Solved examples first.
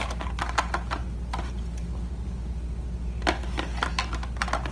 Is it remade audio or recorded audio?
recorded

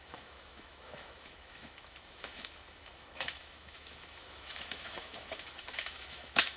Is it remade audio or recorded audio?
remade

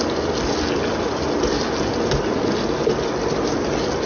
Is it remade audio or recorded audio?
recorded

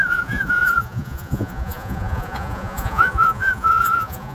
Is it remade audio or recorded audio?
remade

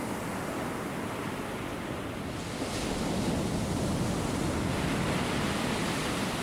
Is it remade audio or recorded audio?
recorded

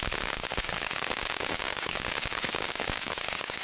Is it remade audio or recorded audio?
remade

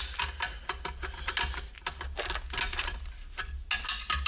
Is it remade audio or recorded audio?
recorded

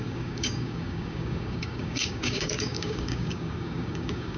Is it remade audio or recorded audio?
remade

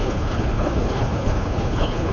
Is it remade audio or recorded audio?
remade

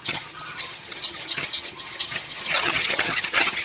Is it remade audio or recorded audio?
remade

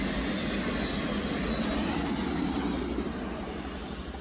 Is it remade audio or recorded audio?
recorded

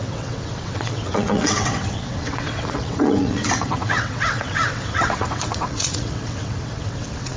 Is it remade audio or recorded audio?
remade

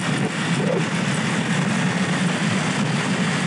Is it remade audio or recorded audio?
recorded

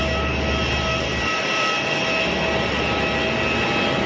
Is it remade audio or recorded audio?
recorded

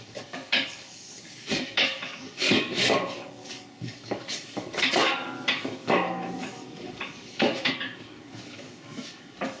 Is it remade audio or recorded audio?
remade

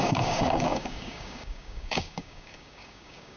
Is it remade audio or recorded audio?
remade